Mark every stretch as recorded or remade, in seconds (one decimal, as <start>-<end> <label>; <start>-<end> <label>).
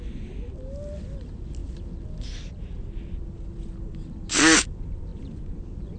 0.0-6.0 recorded